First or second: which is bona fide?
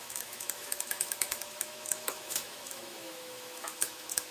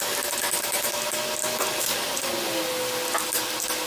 second